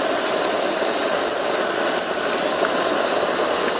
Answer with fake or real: real